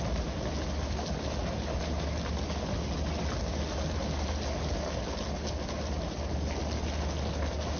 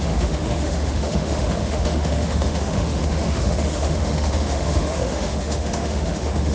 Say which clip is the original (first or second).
first